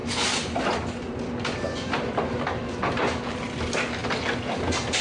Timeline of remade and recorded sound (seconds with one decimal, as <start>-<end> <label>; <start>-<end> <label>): 0.0-5.0 recorded